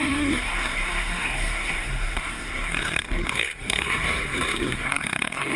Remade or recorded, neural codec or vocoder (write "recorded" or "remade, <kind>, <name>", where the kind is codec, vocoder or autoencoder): remade, codec, SNAC